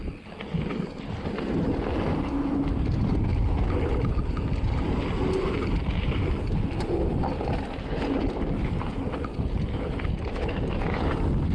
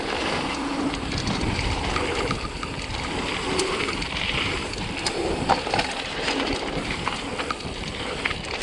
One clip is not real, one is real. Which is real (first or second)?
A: first